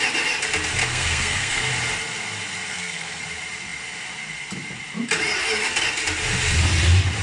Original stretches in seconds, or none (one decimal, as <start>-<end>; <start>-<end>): 0.0-0.8; 1.7-2.7; 3.2-7.2